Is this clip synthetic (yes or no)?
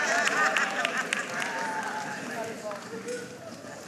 no